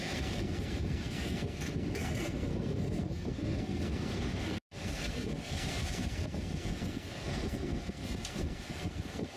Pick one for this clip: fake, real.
fake